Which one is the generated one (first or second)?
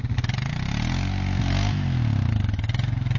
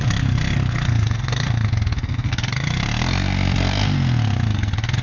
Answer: second